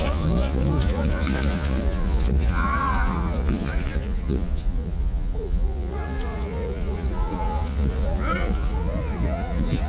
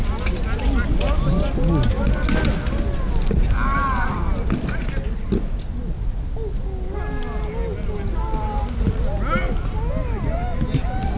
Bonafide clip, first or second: second